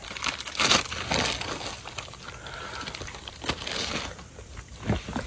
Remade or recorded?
recorded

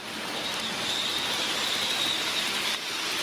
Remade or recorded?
recorded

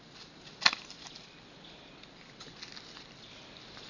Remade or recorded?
recorded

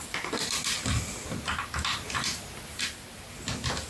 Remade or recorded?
recorded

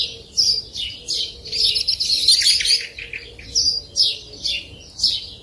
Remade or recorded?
recorded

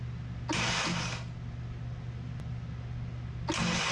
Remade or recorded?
recorded